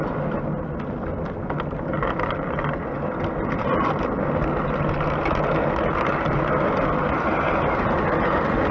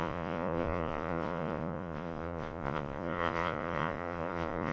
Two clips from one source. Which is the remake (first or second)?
second